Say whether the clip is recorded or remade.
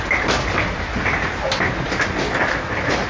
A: recorded